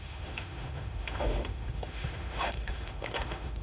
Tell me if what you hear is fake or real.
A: fake